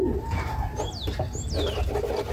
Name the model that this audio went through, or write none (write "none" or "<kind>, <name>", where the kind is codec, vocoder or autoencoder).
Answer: none